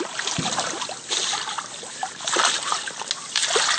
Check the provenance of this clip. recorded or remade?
recorded